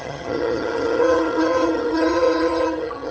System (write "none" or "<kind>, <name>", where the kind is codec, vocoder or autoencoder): vocoder, HiFi-GAN